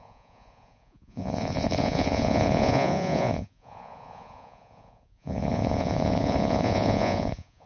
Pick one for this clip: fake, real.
fake